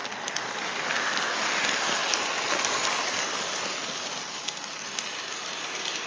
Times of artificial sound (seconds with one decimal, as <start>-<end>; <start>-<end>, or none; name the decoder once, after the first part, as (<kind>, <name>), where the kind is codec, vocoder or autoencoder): none